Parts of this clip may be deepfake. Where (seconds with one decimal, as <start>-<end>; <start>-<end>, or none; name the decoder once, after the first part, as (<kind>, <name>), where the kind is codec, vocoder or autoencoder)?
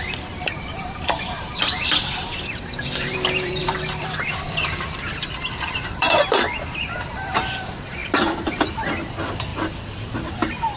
0.0-9.5 (vocoder, BigVGAN v2); 10.1-10.8